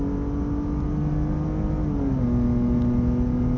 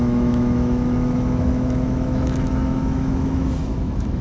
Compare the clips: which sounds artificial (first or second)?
second